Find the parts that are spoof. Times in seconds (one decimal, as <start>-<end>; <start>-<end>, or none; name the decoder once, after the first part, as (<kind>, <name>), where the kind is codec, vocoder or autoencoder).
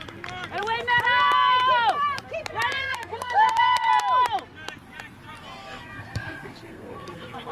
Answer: 2.8-3.9 (codec, SNAC); 5.6-7.5